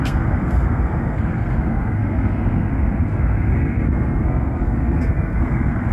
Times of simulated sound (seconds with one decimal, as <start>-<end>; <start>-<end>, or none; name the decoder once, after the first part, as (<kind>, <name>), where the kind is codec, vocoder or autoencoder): 0.0-5.9 (codec, SNAC)